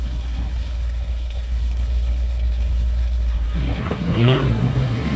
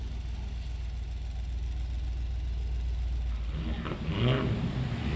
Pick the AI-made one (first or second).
first